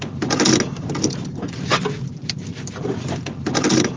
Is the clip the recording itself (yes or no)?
yes